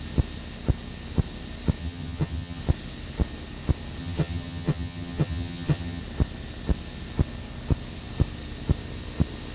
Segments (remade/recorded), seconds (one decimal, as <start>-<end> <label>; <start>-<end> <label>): 0.0-1.8 recorded; 1.8-2.6 remade; 2.6-4.0 recorded; 4.0-6.0 remade; 6.0-9.5 recorded